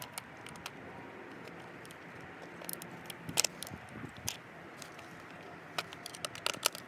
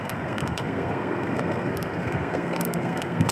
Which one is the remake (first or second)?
second